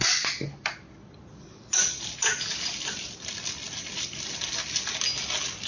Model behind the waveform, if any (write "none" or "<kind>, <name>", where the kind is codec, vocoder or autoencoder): none